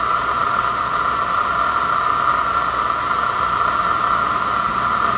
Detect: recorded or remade recorded